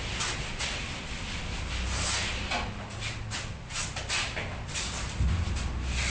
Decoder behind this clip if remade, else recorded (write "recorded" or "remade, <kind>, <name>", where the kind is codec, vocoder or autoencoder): recorded